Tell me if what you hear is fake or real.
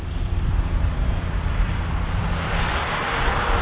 fake